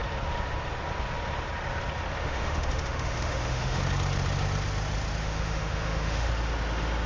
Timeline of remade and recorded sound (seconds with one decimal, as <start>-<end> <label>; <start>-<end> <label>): 0.0-2.2 recorded; 2.2-3.8 remade; 3.8-5.2 recorded; 5.2-6.3 remade; 6.3-7.1 recorded